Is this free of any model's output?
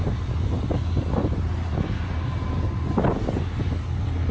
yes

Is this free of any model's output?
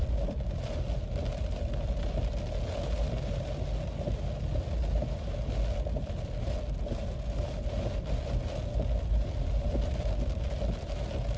yes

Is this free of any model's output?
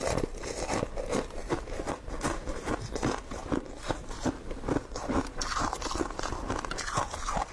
yes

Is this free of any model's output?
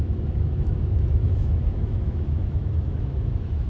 no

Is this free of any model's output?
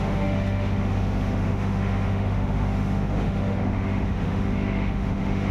no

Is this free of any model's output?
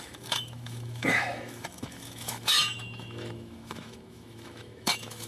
no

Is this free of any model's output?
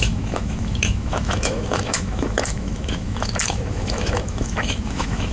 no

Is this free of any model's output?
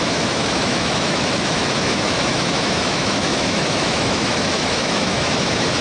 no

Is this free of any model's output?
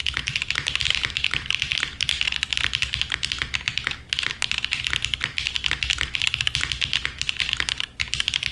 yes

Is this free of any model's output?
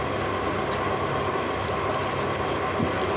yes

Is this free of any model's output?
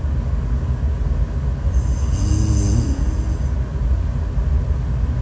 yes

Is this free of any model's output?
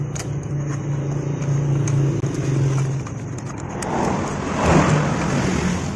yes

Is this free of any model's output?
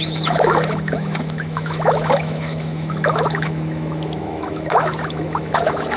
no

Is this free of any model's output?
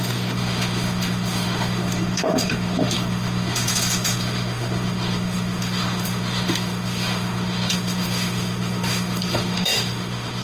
no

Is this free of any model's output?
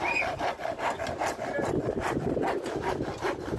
yes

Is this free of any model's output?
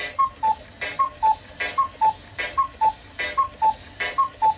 yes